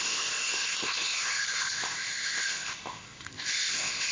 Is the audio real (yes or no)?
no